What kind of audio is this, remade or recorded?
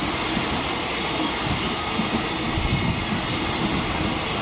recorded